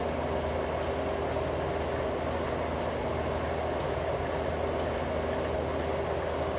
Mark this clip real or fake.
real